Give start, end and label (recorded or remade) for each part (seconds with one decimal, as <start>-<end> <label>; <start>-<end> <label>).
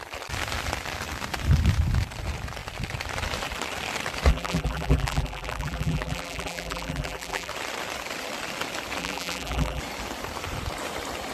0.0-4.3 recorded; 4.3-7.5 remade; 7.5-9.0 recorded; 9.0-9.8 remade; 9.8-11.3 recorded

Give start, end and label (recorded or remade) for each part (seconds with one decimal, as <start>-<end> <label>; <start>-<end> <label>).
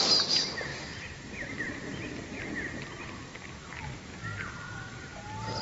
0.0-0.7 recorded; 0.7-2.4 remade; 2.4-5.6 recorded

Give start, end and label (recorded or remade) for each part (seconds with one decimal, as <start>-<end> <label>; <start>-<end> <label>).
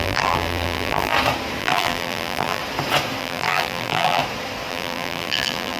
0.0-1.1 remade; 1.1-1.6 recorded; 1.6-2.6 remade; 2.6-3.2 recorded; 3.2-4.2 remade; 4.2-4.7 recorded; 4.7-5.8 remade